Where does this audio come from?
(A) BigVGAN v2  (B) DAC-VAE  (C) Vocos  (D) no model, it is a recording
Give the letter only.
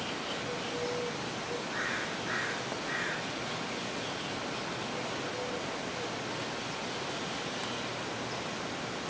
D